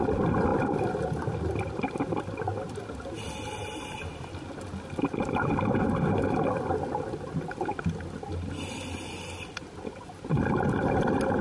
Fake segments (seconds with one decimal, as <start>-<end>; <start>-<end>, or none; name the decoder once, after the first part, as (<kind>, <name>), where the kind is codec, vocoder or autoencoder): none